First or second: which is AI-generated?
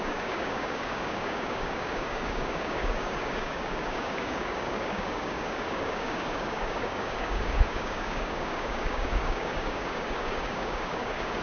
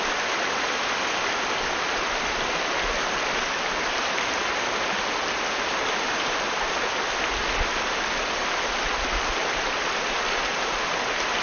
first